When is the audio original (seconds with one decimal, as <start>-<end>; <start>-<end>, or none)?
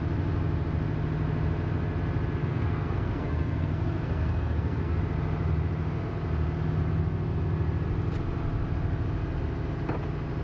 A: 0.0-2.4; 5.0-10.4